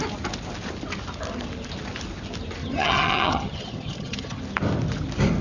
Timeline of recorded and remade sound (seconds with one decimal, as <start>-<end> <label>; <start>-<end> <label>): 0.0-2.6 recorded; 2.6-4.4 remade; 4.4-5.4 recorded